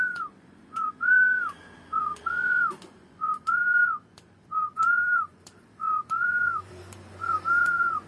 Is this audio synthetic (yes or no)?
yes